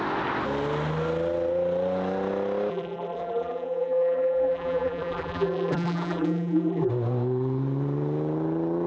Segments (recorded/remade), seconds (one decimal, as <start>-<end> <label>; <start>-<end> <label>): 0.0-2.7 recorded; 2.7-6.9 remade; 6.9-8.9 recorded